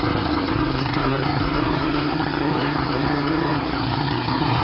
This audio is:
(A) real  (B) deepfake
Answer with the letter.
B